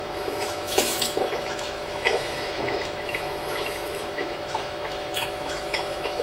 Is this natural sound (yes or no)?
no